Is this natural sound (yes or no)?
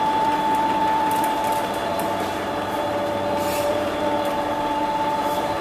no